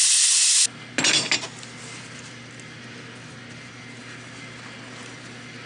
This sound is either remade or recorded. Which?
recorded